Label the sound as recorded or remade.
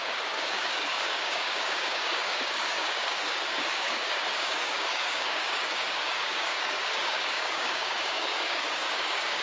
remade